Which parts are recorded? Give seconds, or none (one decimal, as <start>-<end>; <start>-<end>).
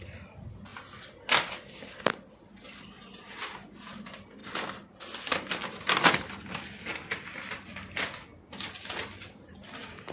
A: 0.0-10.1